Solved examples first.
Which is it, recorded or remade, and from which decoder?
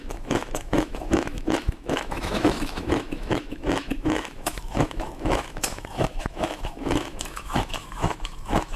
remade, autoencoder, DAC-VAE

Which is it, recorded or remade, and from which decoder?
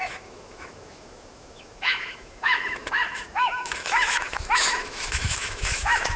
remade, autoencoder, DAC-VAE